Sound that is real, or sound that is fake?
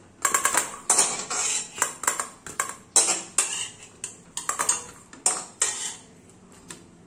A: real